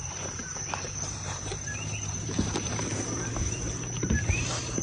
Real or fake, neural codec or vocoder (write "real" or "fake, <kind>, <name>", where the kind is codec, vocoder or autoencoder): fake, vocoder, BigVGAN v2